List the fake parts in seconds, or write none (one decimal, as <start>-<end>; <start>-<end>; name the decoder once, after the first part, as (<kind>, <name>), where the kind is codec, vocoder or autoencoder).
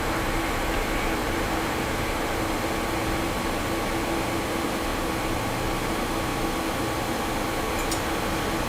1.2-2.4 (vocoder, BigVGAN v2); 4.9-5.7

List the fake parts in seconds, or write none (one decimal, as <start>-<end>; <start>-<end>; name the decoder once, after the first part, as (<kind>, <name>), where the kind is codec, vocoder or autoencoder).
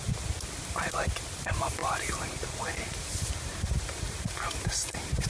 1.8-5.3 (vocoder, BigVGAN v2)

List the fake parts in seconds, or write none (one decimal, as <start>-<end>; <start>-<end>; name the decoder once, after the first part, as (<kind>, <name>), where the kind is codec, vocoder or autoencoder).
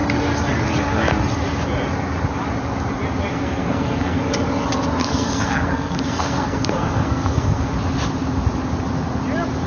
3.3-4.2 (codec, SNAC); 5.0-7.7